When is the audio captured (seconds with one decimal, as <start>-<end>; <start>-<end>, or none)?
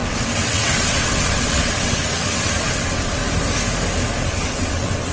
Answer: 3.2-4.2